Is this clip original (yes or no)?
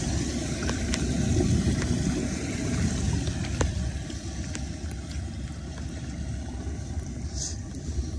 yes